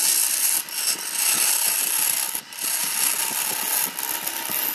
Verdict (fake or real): real